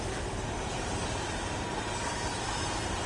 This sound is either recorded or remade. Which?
recorded